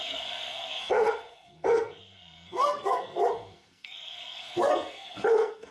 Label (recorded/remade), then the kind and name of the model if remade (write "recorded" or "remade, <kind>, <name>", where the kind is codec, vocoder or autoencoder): remade, codec, SNAC